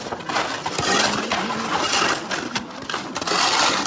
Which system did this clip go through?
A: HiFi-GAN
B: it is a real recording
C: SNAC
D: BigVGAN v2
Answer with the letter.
B